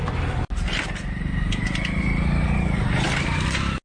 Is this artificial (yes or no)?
no